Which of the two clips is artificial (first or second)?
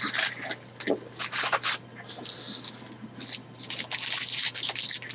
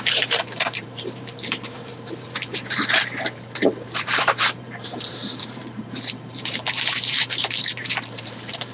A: second